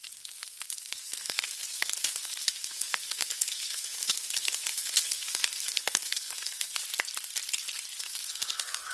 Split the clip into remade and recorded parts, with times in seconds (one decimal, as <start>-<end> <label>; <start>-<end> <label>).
0.0-6.8 remade; 6.8-8.0 recorded; 8.0-8.9 remade